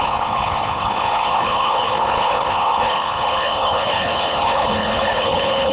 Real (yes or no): no